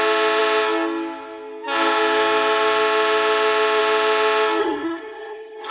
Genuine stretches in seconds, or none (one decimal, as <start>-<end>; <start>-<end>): 0.0-4.6